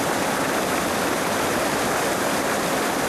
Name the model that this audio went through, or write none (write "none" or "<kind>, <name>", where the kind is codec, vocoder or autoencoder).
none